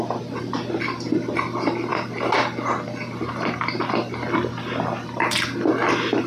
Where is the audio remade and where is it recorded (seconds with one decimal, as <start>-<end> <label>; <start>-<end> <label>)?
0.0-6.3 recorded